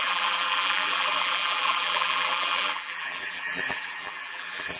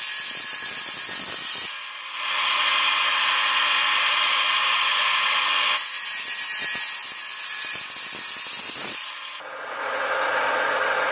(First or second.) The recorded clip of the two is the second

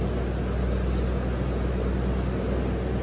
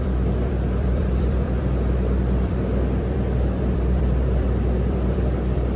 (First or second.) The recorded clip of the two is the first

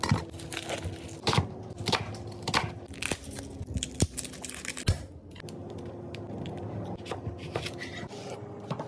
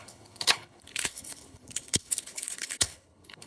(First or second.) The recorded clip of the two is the first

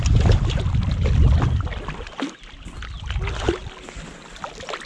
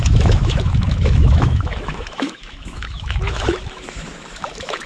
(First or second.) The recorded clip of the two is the first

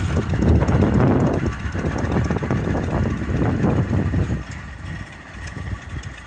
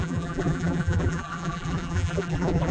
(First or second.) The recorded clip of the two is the first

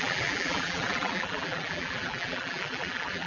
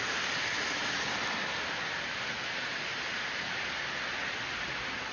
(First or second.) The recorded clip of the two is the second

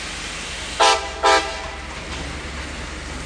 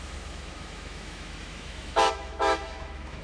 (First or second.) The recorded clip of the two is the first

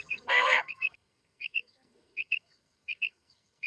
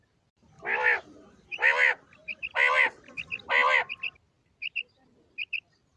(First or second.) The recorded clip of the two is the second